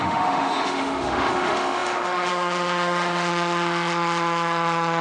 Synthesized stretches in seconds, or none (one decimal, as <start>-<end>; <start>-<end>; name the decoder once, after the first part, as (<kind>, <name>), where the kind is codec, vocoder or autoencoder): 0.0-5.0 (autoencoder, DAC-VAE)